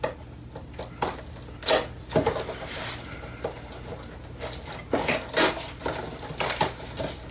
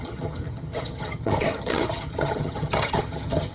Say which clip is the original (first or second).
first